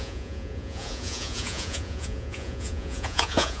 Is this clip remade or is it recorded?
remade